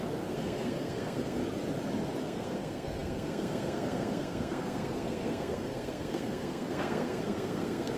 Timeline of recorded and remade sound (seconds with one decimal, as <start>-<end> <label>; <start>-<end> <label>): 0.0-1.4 remade; 1.4-2.2 recorded; 2.2-8.0 remade